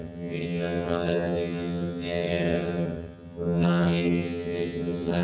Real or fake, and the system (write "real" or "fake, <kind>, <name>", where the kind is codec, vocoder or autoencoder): fake, vocoder, HiFi-GAN